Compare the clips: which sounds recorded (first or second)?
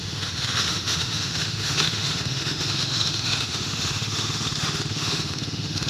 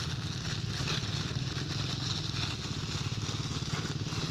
second